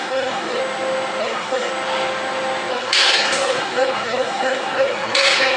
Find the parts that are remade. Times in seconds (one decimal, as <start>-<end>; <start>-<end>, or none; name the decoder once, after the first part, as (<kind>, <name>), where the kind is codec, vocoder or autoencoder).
0.0-0.6 (codec, SNAC); 1.2-1.7; 2.7-5.6